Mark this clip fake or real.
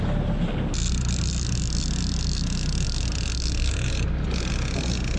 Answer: real